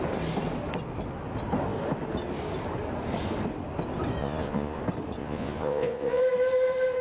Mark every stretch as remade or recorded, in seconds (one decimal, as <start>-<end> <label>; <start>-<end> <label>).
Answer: 0.0-4.2 recorded; 4.2-4.8 remade; 4.8-5.2 recorded; 5.2-6.2 remade; 6.2-7.0 recorded